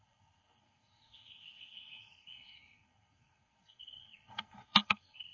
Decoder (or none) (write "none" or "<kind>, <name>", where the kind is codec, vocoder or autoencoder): codec, SNAC